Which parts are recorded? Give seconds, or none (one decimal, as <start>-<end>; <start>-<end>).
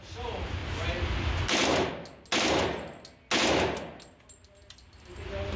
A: 0.0-5.6